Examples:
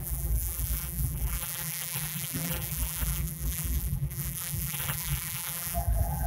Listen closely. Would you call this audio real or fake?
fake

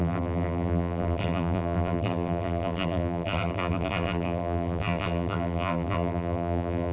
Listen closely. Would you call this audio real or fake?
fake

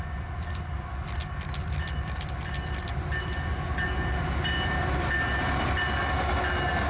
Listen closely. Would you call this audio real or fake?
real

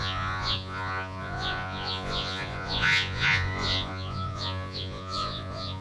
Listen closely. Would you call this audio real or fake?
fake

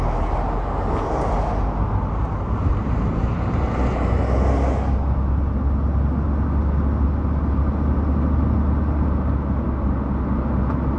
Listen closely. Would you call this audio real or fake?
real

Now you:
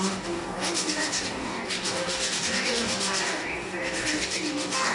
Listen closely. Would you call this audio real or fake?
fake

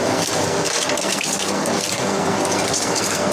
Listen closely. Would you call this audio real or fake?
fake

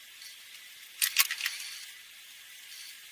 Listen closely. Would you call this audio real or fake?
real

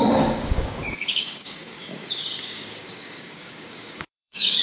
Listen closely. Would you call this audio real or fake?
fake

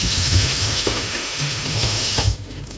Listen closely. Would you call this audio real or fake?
fake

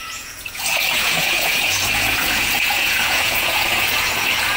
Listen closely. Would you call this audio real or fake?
fake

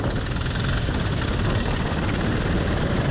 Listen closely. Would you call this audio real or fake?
real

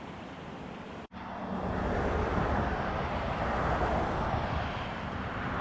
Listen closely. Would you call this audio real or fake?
fake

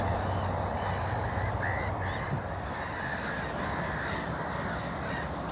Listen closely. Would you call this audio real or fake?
real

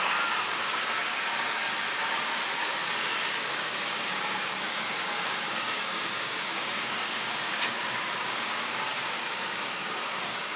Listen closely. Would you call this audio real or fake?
fake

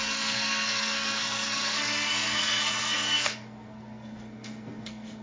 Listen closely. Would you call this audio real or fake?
fake